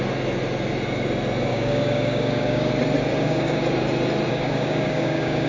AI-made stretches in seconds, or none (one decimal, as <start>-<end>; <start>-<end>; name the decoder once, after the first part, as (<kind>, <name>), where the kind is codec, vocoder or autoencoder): 1.5-2.7 (codec, DAC); 3.1-3.6; 4.3-5.5